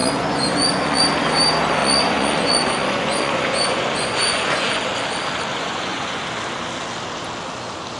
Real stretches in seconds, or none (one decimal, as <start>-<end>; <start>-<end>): 1.0-1.8; 4.7-5.5; 6.2-8.0